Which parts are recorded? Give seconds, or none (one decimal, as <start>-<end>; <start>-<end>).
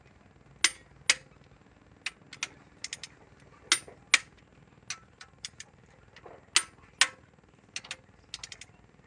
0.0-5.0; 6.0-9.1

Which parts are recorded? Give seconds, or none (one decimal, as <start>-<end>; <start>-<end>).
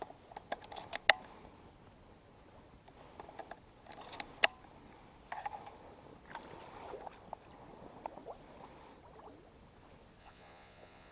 0.0-10.2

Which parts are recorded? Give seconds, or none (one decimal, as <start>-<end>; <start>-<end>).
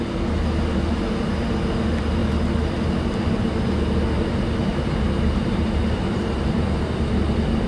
0.0-4.6; 6.8-7.7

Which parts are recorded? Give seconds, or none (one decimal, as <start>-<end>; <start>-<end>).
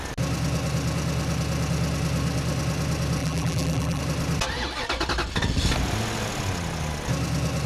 0.0-3.2; 4.0-7.7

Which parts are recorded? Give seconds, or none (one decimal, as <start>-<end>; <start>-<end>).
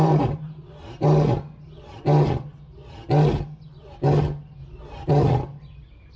0.0-6.2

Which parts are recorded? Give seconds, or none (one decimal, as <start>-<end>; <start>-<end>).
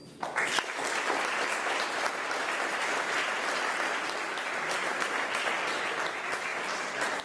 0.0-7.2